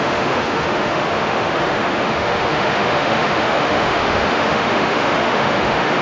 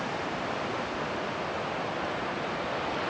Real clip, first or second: second